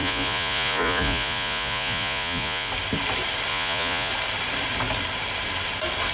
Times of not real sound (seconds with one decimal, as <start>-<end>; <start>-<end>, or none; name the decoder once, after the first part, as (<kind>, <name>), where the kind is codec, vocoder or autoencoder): 0.0-2.7 (vocoder, Vocos); 3.5-4.1